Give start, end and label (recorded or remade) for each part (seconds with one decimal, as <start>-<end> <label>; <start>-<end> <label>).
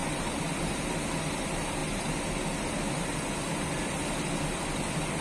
0.0-5.2 recorded